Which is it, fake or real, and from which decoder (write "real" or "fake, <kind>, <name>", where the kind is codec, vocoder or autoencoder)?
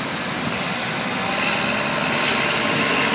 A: real